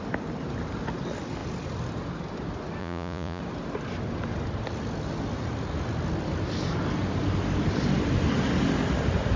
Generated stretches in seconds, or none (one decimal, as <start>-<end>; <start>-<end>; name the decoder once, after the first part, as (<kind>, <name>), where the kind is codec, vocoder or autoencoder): 2.8-3.4 (vocoder, Vocos)